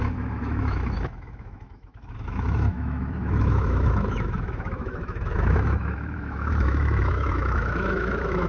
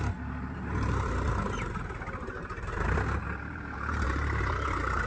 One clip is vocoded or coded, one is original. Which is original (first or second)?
second